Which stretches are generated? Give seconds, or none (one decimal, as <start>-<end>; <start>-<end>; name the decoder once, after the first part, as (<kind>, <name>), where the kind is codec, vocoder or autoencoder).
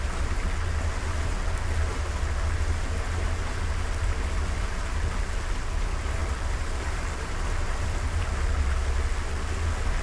6.2-8.3 (vocoder, BigVGAN v2)